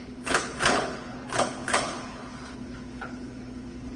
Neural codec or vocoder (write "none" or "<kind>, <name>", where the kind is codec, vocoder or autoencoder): codec, HILCodec